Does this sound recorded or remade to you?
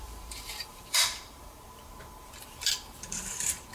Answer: remade